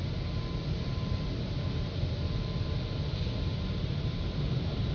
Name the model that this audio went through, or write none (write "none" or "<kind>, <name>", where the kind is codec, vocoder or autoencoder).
none